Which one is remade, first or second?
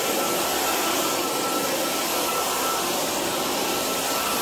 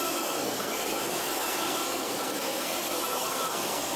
second